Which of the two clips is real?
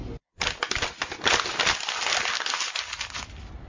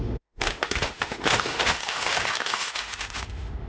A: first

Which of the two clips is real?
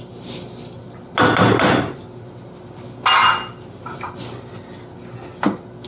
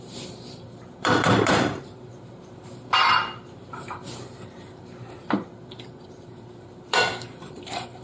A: first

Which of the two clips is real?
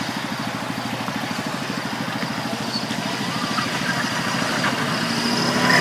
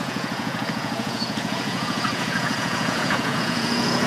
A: first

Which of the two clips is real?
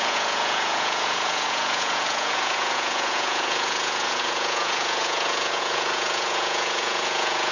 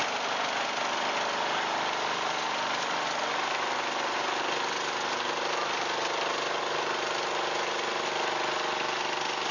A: second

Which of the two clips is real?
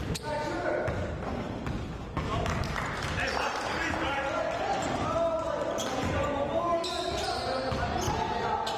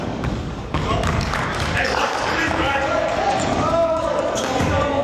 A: first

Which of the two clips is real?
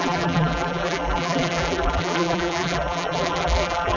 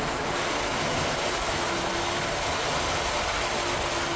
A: second